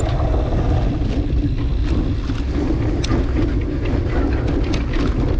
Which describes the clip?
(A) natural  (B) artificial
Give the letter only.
A